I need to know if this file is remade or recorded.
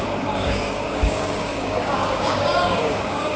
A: remade